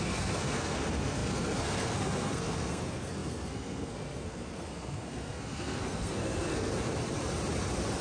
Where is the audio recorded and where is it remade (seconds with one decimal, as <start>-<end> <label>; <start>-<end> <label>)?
0.0-6.7 remade; 6.7-8.0 recorded